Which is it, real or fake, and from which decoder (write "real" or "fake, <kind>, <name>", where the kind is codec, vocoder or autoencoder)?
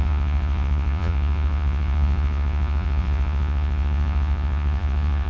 fake, vocoder, Vocos